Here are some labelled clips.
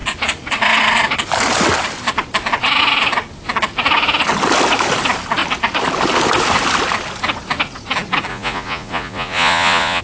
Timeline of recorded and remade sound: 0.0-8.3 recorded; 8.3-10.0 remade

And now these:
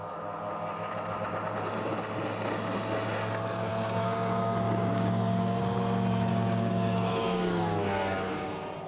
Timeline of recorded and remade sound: 0.0-3.7 recorded; 3.7-5.6 remade; 5.6-6.3 recorded; 6.3-8.5 remade; 8.5-8.9 recorded

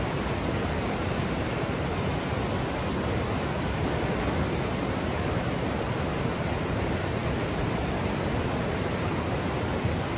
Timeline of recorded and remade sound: 0.0-2.1 remade; 2.1-5.4 recorded; 5.4-10.2 remade

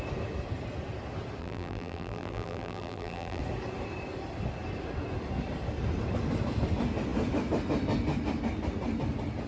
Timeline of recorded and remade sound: 0.0-1.4 recorded; 1.4-3.4 remade; 3.4-9.5 recorded

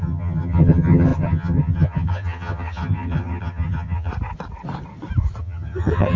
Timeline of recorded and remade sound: 0.0-4.1 remade; 4.1-5.4 recorded; 5.4-6.2 remade